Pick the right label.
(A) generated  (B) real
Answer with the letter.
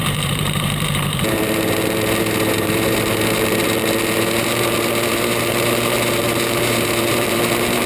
A